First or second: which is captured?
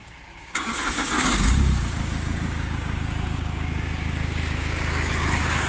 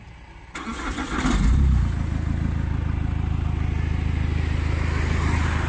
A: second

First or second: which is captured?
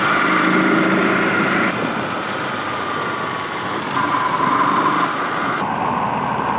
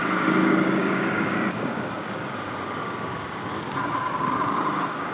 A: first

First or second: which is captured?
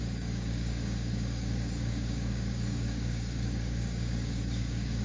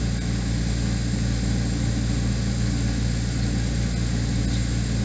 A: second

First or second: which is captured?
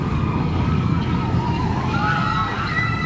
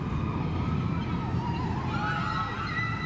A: second